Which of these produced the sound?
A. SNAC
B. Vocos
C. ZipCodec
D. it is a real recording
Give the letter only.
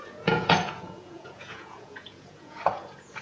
B